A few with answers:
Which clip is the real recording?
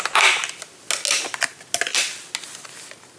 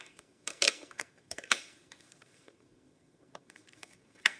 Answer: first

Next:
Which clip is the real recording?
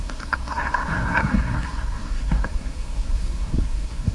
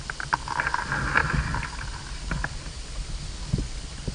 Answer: second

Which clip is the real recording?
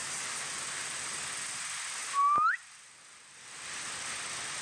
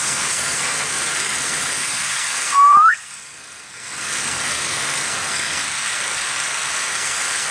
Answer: first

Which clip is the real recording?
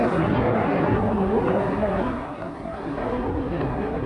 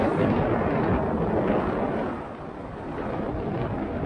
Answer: second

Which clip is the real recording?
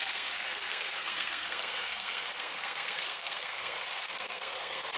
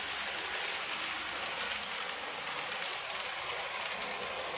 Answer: second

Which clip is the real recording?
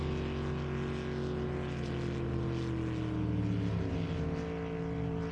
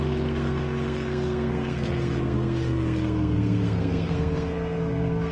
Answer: first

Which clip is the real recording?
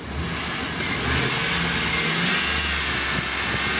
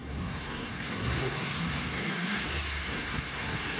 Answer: first